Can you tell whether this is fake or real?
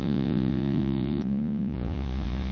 fake